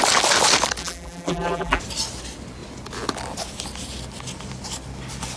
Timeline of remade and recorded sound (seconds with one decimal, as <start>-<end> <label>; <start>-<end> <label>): 0.0-0.8 recorded; 0.8-1.8 remade; 1.8-5.4 recorded